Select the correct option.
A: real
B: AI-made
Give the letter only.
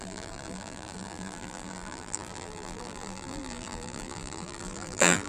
B